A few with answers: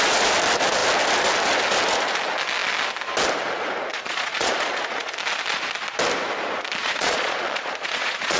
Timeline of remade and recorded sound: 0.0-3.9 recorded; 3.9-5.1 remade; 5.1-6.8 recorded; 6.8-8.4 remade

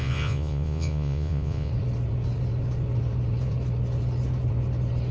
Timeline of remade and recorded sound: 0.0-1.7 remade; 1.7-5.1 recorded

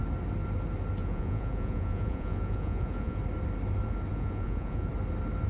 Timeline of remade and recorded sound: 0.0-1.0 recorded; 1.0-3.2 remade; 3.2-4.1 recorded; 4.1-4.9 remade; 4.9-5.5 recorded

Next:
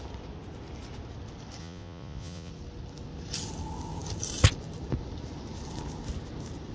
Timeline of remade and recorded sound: 0.0-1.6 recorded; 1.6-2.5 remade; 2.5-6.7 recorded

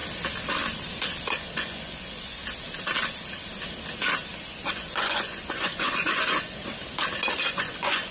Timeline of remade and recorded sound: 0.0-1.3 recorded; 1.3-2.4 remade; 2.4-4.4 recorded; 4.4-6.6 remade; 6.6-7.5 recorded; 7.5-8.1 remade